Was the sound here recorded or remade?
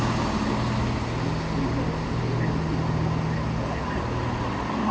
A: recorded